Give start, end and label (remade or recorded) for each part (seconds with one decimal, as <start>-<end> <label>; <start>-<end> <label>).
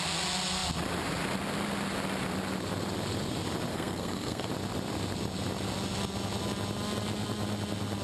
0.0-3.7 recorded; 3.7-4.5 remade; 4.5-8.0 recorded